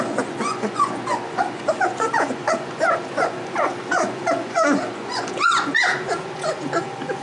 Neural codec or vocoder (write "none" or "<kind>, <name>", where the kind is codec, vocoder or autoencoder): vocoder, Vocos